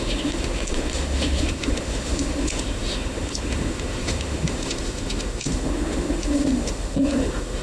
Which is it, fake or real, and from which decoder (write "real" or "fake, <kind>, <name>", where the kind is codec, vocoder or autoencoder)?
fake, autoencoder, DAC-VAE